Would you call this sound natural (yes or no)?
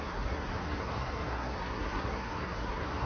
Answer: no